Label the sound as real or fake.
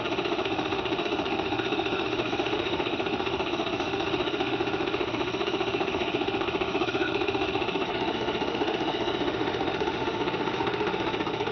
fake